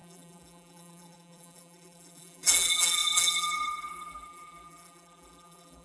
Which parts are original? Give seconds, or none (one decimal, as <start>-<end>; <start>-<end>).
none